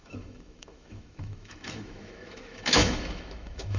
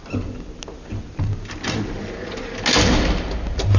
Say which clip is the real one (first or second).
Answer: second